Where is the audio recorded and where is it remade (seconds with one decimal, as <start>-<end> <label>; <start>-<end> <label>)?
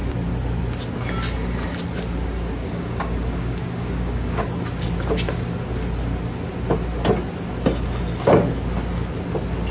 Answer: 0.0-2.6 recorded; 2.6-4.4 remade; 4.4-9.7 recorded